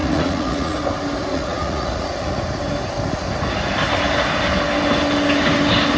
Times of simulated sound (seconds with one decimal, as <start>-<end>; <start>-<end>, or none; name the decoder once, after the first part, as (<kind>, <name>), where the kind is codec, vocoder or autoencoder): 0.0-0.8 (vocoder, Vocos); 1.3-2.4